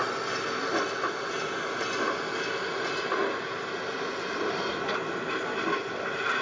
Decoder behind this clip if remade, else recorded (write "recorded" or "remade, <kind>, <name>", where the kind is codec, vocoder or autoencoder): recorded